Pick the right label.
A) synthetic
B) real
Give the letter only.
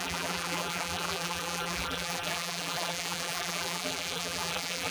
A